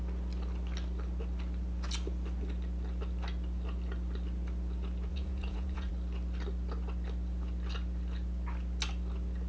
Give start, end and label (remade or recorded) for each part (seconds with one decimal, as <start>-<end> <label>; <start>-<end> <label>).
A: 0.0-5.1 recorded; 5.1-5.9 remade; 5.9-9.5 recorded